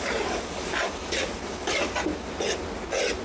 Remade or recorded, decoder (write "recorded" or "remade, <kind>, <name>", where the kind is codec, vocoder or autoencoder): recorded